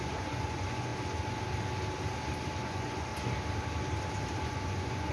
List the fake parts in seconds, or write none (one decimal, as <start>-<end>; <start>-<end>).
0.0-0.9; 2.6-3.1; 4.4-5.1